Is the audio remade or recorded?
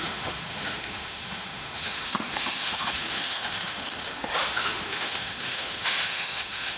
remade